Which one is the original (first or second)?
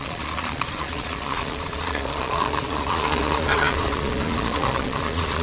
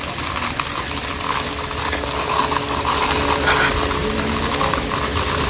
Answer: second